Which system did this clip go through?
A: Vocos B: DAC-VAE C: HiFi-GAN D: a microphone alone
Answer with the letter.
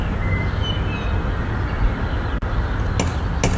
D